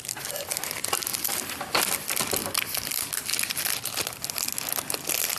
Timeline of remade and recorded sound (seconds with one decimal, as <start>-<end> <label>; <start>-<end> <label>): 0.0-1.1 recorded; 1.1-1.8 remade; 1.8-2.4 recorded; 2.4-3.1 remade; 3.1-5.4 recorded